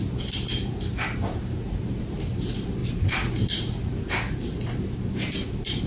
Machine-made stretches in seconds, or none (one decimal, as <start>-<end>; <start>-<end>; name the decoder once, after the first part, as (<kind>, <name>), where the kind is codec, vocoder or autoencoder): 0.0-5.9 (vocoder, BigVGAN v2)